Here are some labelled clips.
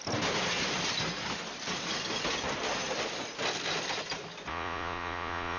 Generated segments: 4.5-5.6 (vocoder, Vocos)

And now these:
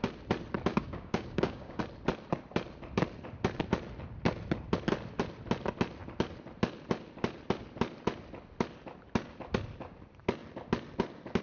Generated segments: 0.7-1.8 (codec, DAC)

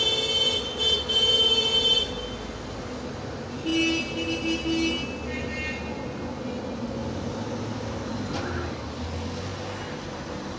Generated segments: none

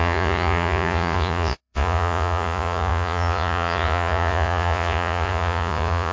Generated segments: 0.0-6.1 (vocoder, Vocos)

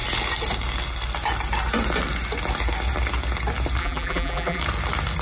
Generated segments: 3.8-4.6 (vocoder, BigVGAN v2)

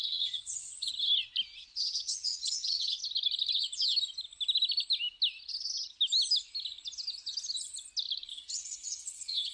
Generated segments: 0.0-0.9 (vocoder, WaveNeXt); 1.6-3.0; 8.3-9.5

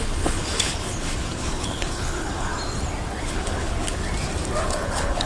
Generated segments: 0.0-2.5 (codec, HILCodec); 3.2-4.0; 4.6-5.3

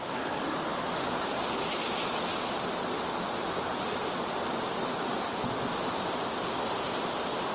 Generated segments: 0.0-2.3 (vocoder, BigVGAN v2); 6.8-7.5